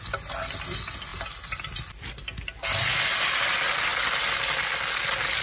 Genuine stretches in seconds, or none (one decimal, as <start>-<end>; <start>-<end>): 0.0-5.4